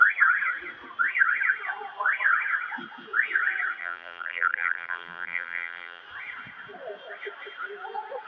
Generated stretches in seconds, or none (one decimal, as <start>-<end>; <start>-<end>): 3.8-6.0